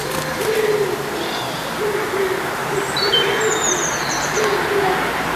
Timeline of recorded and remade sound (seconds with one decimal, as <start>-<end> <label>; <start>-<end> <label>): 0.0-2.6 recorded; 2.6-3.3 remade; 3.3-5.4 recorded

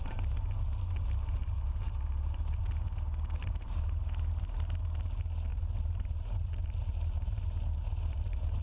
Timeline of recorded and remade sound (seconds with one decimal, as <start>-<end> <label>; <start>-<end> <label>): 0.0-1.4 recorded; 1.4-2.6 remade; 2.6-3.4 recorded; 3.4-4.0 remade; 4.0-5.5 recorded; 5.5-8.6 remade

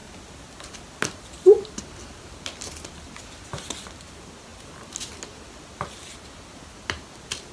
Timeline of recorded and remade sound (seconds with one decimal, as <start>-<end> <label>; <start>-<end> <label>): 0.0-1.7 remade; 1.7-7.5 recorded

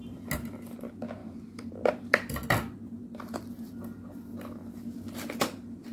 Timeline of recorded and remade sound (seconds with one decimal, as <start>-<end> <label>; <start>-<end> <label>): 0.0-1.2 recorded; 1.2-3.7 remade; 3.7-5.9 recorded

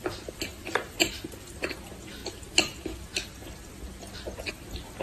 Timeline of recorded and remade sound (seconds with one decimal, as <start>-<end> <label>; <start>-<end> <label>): 0.0-0.5 recorded; 0.5-1.5 remade; 1.5-5.0 recorded